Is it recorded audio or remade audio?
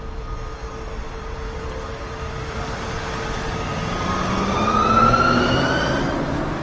recorded